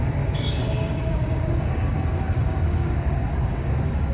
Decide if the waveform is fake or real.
fake